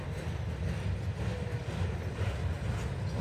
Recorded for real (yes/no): yes